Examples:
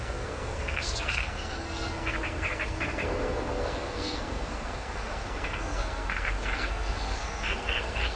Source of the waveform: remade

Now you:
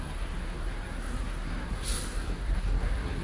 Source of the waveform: remade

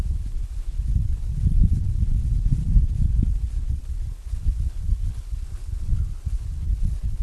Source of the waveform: remade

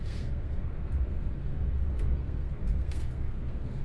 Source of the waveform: remade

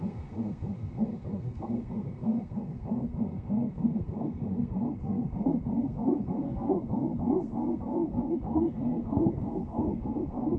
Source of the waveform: remade